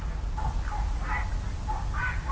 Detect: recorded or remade recorded